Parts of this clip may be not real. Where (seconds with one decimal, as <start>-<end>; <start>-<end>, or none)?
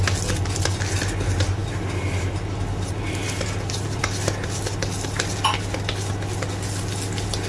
1.6-6.1